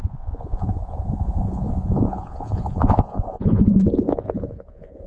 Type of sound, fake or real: fake